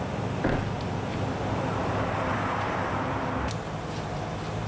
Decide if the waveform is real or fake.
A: real